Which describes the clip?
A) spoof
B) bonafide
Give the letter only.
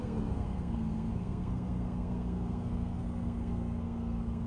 A